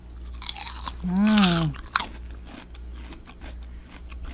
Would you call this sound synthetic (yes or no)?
no